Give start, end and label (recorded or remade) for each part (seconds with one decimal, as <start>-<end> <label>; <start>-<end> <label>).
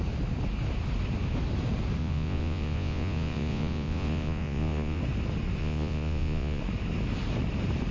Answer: 0.0-2.0 recorded; 2.0-5.0 remade; 5.0-5.6 recorded; 5.6-6.6 remade; 6.6-7.9 recorded